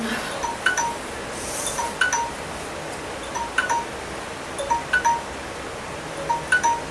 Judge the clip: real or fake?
real